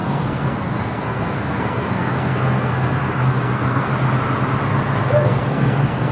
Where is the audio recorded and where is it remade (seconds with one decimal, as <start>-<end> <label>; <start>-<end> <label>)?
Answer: 0.0-3.9 remade; 3.9-5.1 recorded; 5.1-6.1 remade